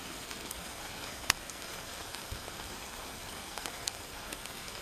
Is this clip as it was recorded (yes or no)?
no